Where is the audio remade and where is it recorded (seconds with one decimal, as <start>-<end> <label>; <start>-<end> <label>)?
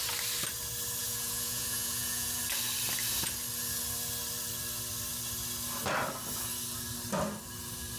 0.0-1.0 recorded; 1.0-2.4 remade; 2.4-8.0 recorded